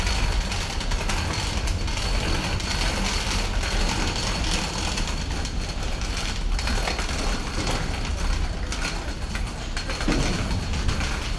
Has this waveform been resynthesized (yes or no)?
no